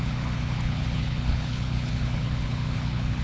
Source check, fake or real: fake